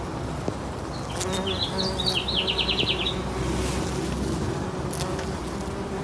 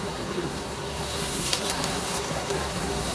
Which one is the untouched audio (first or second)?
first